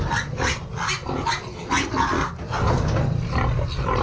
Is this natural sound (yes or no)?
yes